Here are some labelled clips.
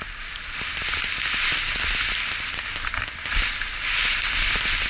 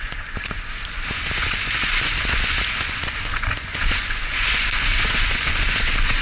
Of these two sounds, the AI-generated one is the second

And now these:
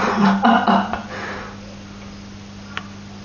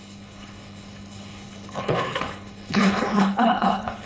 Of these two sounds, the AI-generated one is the second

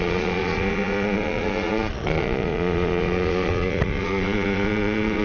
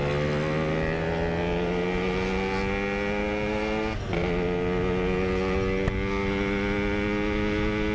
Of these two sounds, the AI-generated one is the first